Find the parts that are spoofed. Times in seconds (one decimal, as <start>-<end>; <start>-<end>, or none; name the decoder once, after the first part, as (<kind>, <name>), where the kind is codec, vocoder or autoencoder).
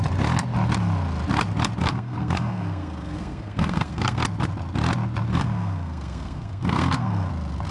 1.8-4.2 (codec, SNAC); 5.3-7.3